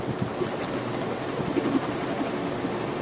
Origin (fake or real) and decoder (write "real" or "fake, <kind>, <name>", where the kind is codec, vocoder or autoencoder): real